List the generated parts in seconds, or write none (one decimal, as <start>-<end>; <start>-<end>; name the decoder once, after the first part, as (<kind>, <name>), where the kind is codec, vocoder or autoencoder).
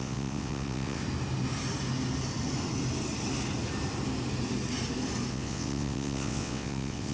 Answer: 0.0-1.0 (vocoder, WaveNeXt); 5.3-7.1